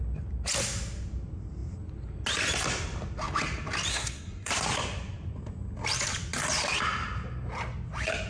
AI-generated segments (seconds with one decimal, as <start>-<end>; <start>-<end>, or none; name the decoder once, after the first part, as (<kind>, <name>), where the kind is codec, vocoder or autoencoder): 3.9-4.5 (codec, SNAC)